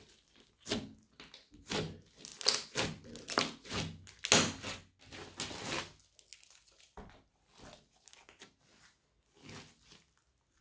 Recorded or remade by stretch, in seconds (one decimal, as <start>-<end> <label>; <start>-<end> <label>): 0.0-10.6 recorded